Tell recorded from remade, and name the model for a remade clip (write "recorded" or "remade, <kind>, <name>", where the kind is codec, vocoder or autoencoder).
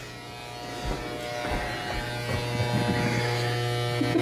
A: recorded